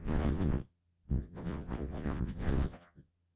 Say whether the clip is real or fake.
fake